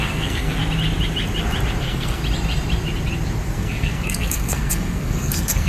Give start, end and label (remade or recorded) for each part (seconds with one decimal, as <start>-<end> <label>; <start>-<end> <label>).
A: 0.0-0.6 remade; 0.6-1.8 recorded; 1.8-2.2 remade; 2.2-3.5 recorded; 3.5-5.7 remade